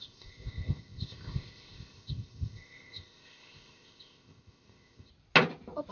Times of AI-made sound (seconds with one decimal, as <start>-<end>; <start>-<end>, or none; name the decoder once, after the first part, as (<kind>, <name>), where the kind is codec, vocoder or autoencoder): 0.0-5.1 (codec, ZipCodec)